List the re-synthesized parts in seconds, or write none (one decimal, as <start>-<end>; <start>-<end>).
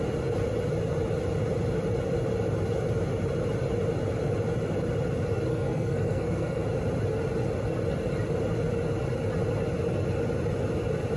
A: 5.5-6.6